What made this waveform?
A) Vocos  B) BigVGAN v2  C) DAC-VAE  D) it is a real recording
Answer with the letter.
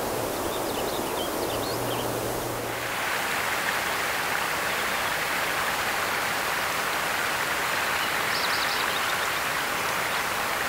D